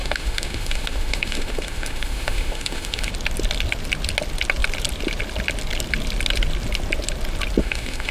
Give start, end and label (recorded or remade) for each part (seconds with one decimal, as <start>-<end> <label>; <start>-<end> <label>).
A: 0.0-3.1 remade; 3.1-7.6 recorded; 7.6-8.1 remade